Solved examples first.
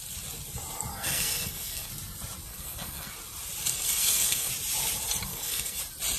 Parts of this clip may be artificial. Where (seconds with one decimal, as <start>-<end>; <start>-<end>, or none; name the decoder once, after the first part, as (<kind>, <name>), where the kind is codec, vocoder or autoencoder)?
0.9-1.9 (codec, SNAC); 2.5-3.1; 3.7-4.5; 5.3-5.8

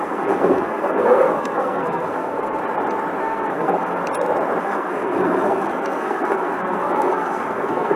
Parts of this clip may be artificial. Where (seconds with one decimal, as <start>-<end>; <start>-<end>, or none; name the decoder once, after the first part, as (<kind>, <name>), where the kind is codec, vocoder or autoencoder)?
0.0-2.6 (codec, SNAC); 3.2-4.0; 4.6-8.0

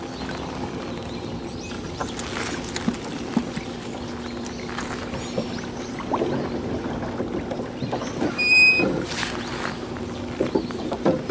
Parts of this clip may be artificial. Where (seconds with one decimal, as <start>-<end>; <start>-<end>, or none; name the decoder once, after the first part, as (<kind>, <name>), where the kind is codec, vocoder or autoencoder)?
none

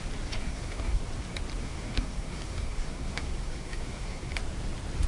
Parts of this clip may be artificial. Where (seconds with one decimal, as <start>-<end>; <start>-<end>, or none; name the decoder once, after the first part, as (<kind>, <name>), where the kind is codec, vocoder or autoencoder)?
0.4-1.0 (codec, SNAC); 1.6-4.3

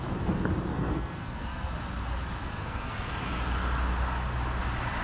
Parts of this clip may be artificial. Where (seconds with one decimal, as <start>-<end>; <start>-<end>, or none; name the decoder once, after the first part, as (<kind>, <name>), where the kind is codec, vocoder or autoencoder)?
0.7-1.7 (codec, SNAC); 2.4-3.2

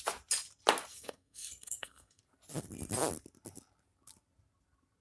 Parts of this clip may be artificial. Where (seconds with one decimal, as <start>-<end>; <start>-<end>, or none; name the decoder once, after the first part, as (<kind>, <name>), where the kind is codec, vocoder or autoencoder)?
0.9-2.2 (codec, SNAC)

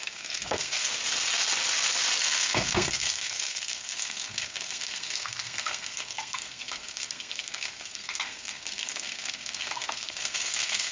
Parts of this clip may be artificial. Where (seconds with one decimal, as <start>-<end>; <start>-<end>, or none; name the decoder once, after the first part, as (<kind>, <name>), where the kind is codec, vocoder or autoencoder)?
0.0-0.9 (codec, SNAC); 2.2-10.9

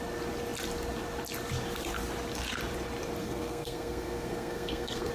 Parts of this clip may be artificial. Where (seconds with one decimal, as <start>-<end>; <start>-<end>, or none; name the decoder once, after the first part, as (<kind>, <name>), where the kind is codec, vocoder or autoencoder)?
3.2-5.1 (codec, SNAC)